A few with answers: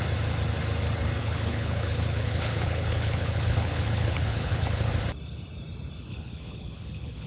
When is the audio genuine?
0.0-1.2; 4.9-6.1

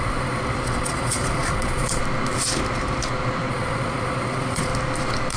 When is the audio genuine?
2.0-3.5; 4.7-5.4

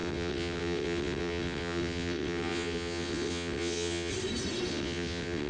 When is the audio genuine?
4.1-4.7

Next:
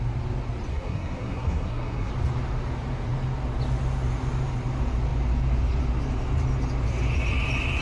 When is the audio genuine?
0.0-0.7; 2.1-7.8

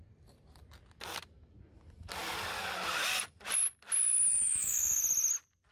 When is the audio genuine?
0.0-4.3; 5.0-5.7